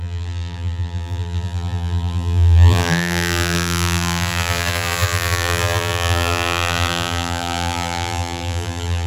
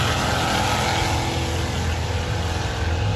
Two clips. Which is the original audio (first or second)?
second